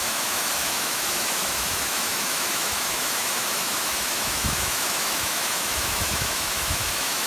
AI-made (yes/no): yes